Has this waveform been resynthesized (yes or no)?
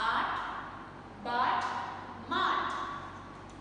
no